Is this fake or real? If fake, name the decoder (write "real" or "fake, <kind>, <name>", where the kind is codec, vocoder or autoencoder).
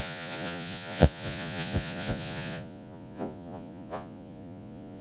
fake, vocoder, Vocos